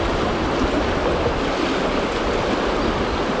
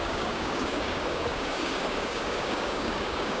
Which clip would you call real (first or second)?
first